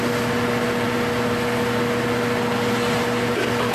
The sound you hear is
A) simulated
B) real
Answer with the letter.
B